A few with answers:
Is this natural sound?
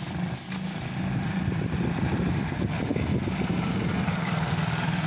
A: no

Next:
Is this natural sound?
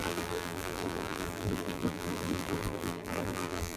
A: no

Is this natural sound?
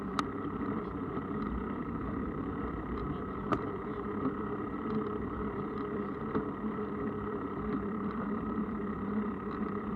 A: no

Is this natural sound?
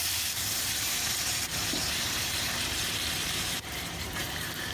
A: no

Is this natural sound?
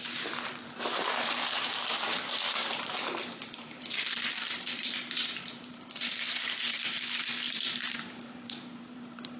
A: no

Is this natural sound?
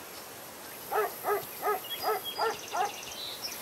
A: yes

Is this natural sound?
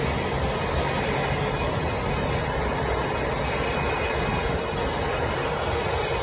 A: yes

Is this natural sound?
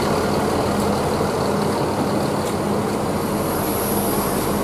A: yes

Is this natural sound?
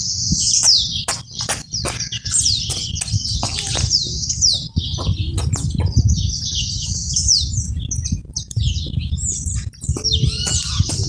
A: yes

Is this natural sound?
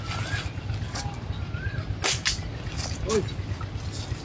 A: yes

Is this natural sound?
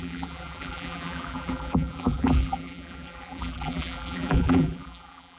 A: no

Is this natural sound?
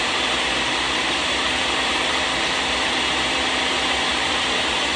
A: no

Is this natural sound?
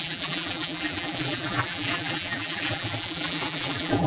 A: no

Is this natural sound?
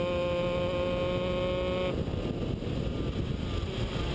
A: yes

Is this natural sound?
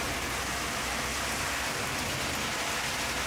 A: yes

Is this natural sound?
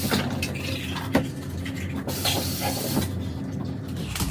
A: yes